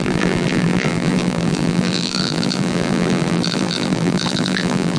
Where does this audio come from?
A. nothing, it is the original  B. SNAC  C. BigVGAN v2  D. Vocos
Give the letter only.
C